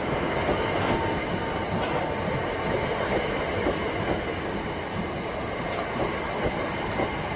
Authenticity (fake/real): real